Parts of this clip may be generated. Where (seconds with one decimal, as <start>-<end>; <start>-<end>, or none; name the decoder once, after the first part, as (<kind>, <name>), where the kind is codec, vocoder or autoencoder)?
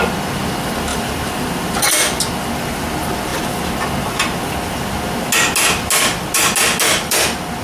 0.9-1.8 (vocoder, BigVGAN v2)